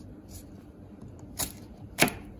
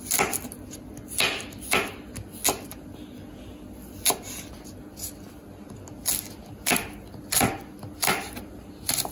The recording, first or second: second